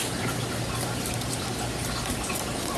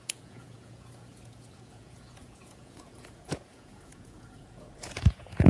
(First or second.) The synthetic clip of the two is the second